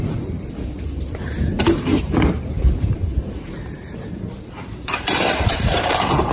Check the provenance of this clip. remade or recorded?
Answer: remade